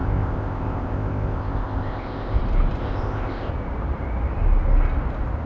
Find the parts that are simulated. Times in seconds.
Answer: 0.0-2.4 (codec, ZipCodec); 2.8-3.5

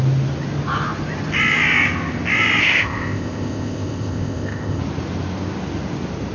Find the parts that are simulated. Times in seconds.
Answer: 2.6-4.8 (codec, ZipCodec)

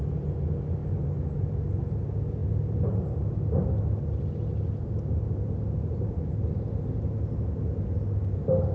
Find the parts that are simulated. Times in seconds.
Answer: none

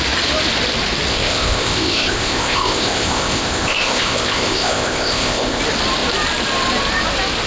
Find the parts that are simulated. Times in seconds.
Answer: 1.1-5.6 (codec, ZipCodec)